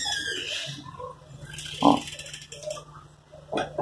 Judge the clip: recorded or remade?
recorded